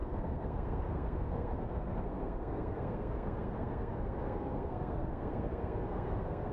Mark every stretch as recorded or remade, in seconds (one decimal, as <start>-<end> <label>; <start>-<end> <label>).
0.0-6.5 remade